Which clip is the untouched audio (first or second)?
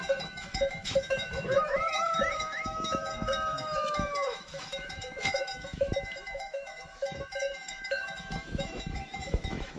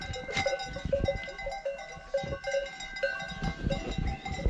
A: second